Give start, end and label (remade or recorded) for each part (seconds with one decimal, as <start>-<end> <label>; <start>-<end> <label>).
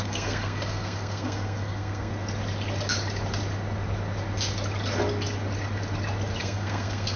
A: 0.0-2.1 remade; 2.1-6.4 recorded; 6.4-7.2 remade